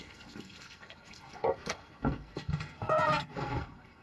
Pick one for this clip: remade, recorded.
remade